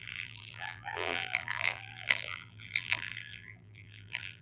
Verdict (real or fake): fake